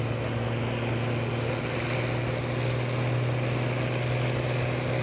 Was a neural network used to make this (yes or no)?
no